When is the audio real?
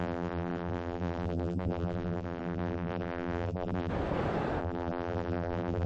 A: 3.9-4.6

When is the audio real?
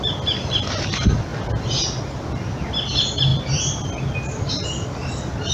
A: 0.0-5.5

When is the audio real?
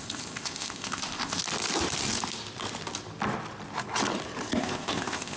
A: 1.4-4.6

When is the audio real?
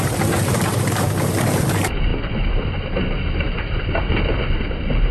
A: 0.0-5.1